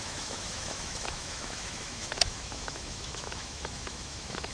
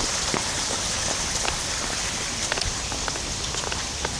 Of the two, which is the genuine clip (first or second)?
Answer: second